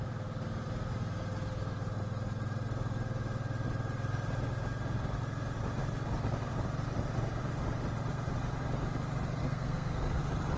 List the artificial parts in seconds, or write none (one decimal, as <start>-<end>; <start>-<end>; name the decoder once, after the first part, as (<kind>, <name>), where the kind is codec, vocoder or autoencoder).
9.4-10.2 (codec, SNAC)